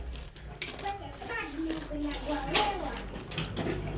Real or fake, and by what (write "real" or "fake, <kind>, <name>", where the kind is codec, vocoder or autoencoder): real